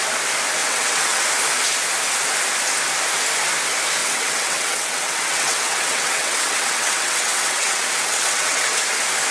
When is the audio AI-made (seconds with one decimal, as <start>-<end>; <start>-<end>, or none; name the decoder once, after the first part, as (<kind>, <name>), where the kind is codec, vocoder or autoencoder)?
0.6-1.2 (vocoder, WaveNeXt); 4.0-8.8